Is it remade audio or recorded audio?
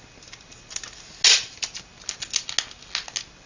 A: recorded